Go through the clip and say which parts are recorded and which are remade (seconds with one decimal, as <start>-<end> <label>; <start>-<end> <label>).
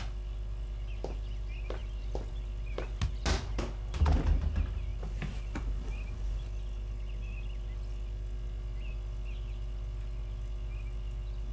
0.0-11.5 recorded